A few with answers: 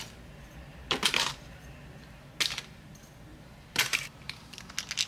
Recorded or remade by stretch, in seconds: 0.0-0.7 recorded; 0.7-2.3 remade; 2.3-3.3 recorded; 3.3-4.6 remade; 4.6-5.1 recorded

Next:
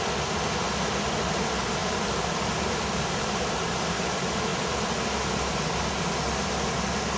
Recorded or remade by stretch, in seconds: 0.0-1.8 recorded; 1.8-4.1 remade; 4.1-7.2 recorded

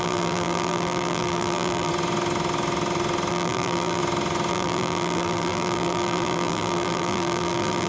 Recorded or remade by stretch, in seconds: 0.0-1.9 remade; 1.9-3.3 recorded; 3.3-4.0 remade; 4.0-4.5 recorded; 4.5-7.9 remade

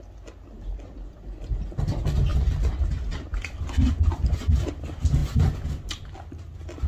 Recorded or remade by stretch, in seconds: 0.0-6.9 recorded

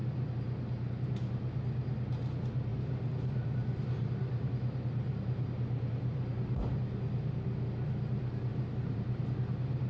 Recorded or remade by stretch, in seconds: 0.0-2.7 recorded; 2.7-6.8 remade; 6.8-8.5 recorded; 8.5-9.2 remade; 9.2-9.9 recorded

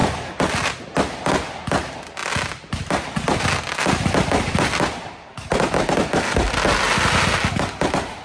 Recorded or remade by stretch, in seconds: 0.0-0.8 remade; 0.8-2.2 recorded; 2.2-5.7 remade; 5.7-8.2 recorded